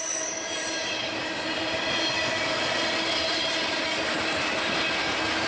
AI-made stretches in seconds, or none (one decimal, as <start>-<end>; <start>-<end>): none